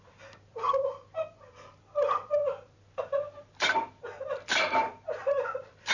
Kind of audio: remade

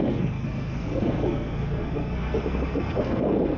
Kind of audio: remade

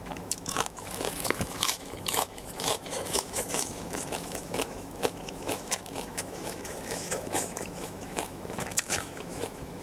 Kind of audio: remade